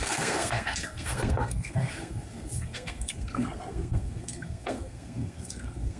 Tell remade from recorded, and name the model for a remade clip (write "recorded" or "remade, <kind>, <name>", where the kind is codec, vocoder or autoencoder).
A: remade, codec, SNAC